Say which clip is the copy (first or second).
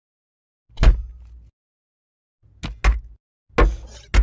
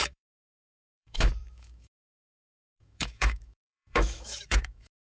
second